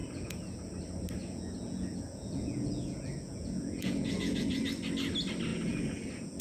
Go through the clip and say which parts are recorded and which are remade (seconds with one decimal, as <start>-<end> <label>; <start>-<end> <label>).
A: 0.0-0.7 remade; 0.7-1.2 recorded; 1.2-4.6 remade; 4.6-5.5 recorded; 5.5-6.4 remade